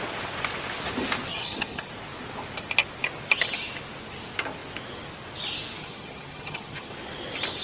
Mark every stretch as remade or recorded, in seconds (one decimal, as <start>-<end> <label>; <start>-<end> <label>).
0.0-1.3 recorded; 1.3-1.9 remade; 1.9-5.8 recorded; 5.8-6.9 remade; 6.9-7.6 recorded